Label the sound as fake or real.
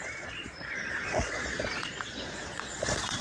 fake